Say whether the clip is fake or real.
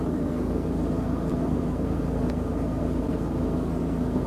fake